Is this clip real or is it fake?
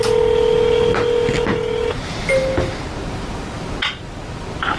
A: real